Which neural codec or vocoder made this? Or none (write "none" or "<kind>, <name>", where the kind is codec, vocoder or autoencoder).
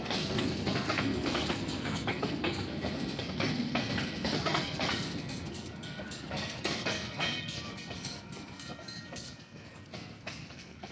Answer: codec, SNAC